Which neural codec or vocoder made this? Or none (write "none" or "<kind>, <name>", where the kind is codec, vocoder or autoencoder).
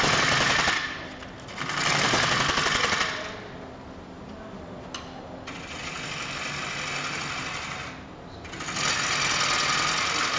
none